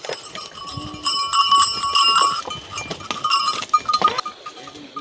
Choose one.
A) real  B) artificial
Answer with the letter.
A